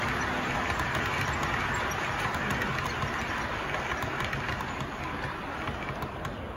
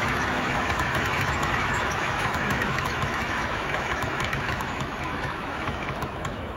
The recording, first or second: first